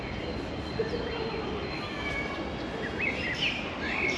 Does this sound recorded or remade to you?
recorded